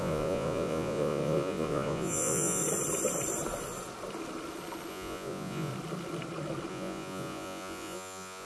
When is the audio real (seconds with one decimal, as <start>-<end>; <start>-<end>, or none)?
2.6-4.9; 5.7-6.7